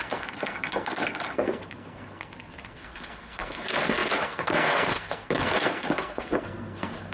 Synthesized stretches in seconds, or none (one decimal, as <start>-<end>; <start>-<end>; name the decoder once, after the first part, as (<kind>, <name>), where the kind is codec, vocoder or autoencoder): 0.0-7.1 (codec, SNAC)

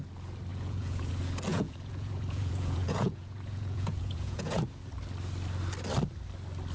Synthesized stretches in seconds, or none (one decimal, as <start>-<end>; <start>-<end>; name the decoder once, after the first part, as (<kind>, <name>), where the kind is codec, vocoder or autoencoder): 0.5-1.1 (vocoder, Vocos); 1.5-4.6

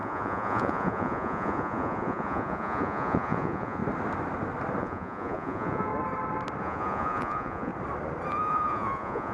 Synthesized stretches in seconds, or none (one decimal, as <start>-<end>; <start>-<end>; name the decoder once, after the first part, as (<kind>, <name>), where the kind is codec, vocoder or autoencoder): 0.0-3.8 (vocoder, Vocos); 4.8-5.9; 6.6-7.7; 8.3-9.3

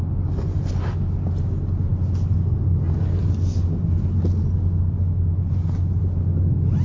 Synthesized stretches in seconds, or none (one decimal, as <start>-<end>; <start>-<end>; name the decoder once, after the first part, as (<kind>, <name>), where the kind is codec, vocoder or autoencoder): none